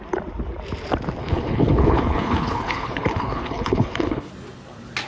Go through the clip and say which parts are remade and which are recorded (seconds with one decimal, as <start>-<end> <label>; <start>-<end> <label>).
0.0-1.2 recorded; 1.2-4.3 remade; 4.3-5.1 recorded